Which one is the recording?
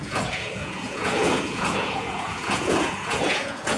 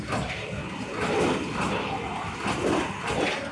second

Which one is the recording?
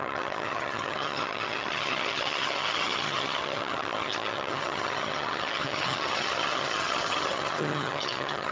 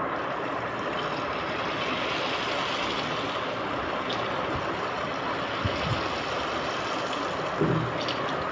second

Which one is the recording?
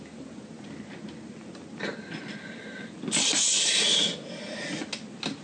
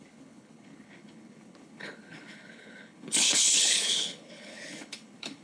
first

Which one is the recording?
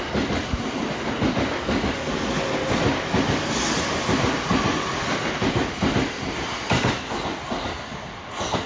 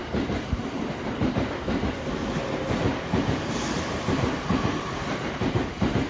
first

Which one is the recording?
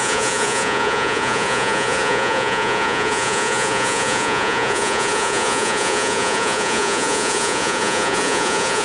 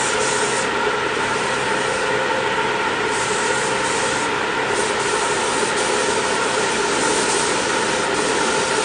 second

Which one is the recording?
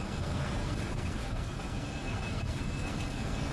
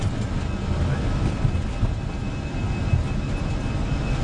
second